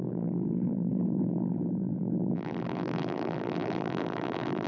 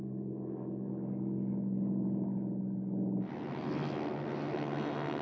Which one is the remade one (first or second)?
first